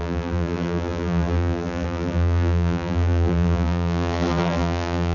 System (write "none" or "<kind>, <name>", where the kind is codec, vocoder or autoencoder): vocoder, BigVGAN v2